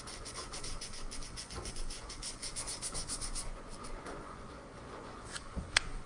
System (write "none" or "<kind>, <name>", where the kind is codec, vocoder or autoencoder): vocoder, Vocos